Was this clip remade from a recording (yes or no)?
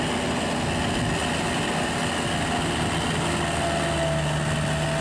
no